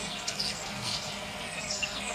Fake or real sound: fake